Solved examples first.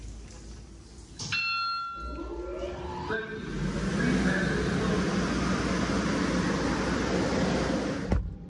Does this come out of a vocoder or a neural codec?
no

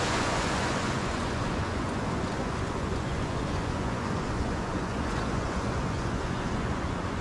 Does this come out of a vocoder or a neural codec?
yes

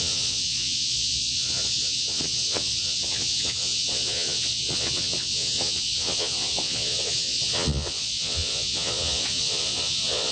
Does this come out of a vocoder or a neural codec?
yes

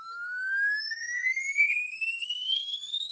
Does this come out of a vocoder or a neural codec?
yes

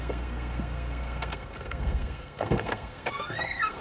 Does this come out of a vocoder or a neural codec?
yes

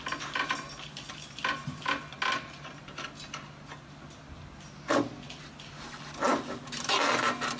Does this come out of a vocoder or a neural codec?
no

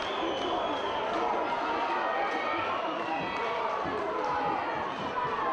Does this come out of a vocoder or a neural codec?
no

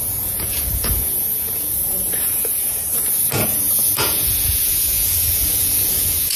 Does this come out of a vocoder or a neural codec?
yes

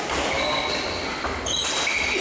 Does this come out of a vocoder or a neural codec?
no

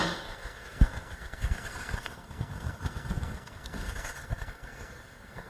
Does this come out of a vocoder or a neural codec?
yes